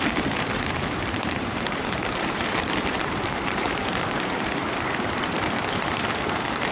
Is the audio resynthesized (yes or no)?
yes